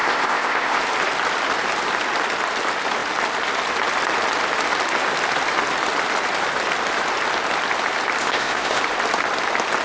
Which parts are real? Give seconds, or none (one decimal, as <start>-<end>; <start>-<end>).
0.8-8.2; 8.8-9.8